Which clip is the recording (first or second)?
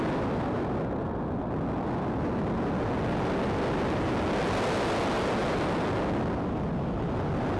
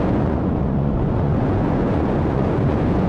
first